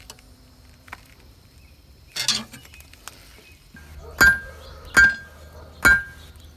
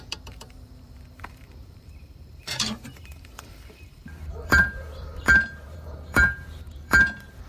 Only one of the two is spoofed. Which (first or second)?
second